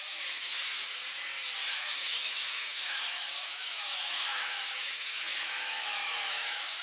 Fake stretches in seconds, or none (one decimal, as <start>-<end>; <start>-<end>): 0.0-1.0; 1.7-6.8